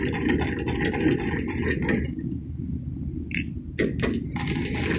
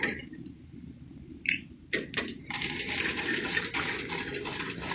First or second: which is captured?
first